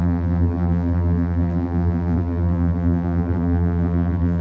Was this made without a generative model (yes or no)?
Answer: no